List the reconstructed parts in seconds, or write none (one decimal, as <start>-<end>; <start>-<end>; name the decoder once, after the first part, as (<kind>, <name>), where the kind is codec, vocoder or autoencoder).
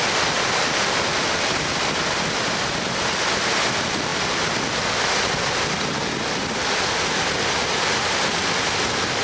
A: none